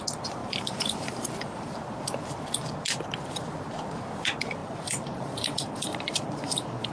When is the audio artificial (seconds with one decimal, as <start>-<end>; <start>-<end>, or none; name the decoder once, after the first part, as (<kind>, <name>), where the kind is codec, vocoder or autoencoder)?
0.4-1.3 (vocoder, BigVGAN v2); 4.6-6.9